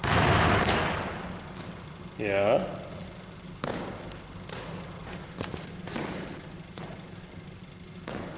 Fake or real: real